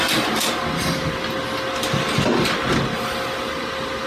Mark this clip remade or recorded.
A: recorded